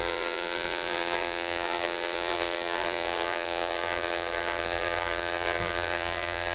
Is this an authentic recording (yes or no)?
no